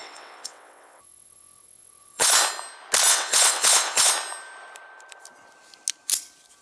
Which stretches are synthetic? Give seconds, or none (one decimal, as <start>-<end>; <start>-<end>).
0.0-2.3; 3.1-4.1